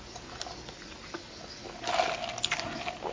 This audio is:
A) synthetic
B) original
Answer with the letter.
B